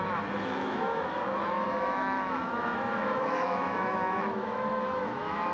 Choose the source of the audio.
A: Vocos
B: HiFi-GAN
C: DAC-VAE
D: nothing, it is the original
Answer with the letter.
C